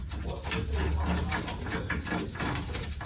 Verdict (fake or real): real